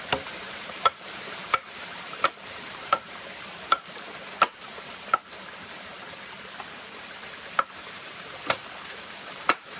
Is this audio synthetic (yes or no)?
yes